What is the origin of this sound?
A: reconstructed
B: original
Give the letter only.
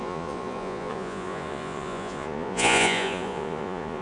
A